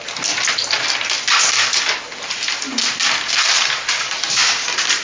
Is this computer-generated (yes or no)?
no